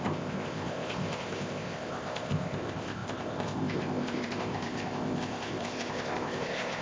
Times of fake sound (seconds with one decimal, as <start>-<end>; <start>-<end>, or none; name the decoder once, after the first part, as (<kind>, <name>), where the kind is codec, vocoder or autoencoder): 0.0-6.8 (codec, ZipCodec)